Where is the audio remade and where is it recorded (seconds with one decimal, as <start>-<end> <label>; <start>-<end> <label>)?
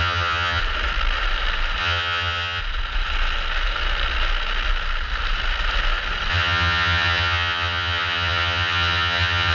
0.0-0.6 remade; 0.6-1.8 recorded; 1.8-2.6 remade; 2.6-6.3 recorded; 6.3-9.5 remade